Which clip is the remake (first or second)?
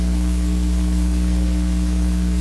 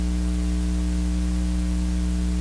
first